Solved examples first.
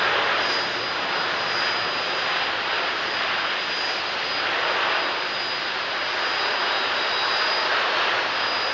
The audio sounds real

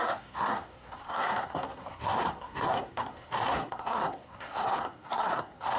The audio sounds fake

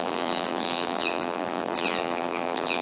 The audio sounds fake